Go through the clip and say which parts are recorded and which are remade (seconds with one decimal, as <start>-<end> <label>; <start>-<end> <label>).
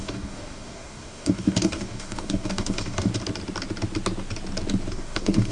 0.0-3.1 remade; 3.1-4.9 recorded; 4.9-5.5 remade